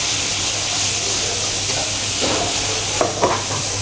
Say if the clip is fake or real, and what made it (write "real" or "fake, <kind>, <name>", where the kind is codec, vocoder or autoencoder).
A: real